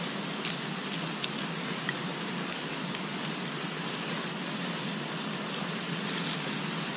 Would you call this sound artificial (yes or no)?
no